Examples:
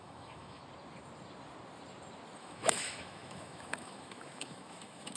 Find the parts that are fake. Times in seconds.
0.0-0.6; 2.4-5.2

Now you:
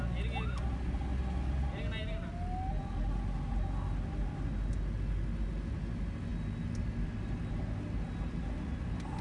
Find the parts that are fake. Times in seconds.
none

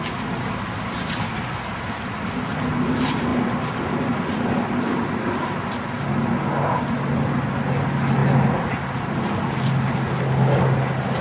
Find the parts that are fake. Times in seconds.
none